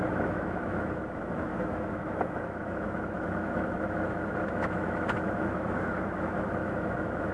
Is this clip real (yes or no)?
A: no